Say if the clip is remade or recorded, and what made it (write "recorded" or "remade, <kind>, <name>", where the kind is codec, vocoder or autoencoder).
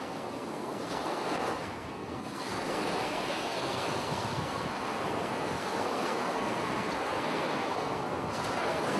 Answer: remade, codec, SNAC